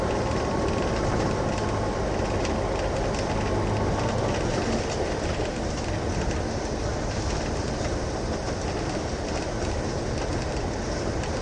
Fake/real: real